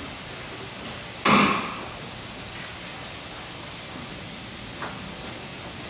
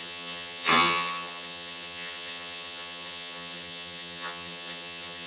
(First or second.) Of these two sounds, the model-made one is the second